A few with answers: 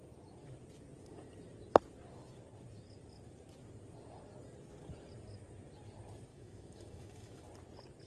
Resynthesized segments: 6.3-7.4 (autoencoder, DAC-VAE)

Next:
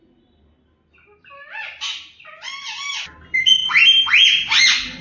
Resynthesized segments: none

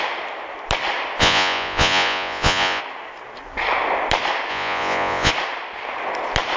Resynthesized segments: 1.2-2.8 (vocoder, Vocos); 4.5-5.3

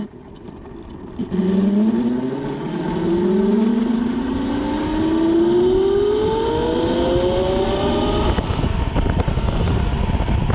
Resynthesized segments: 3.7-4.4 (vocoder, BigVGAN v2)

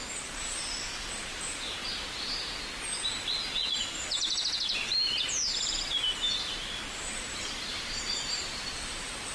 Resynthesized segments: 0.0-1.8 (vocoder, BigVGAN v2); 7.1-9.3